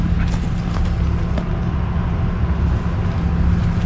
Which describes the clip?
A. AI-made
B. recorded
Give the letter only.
B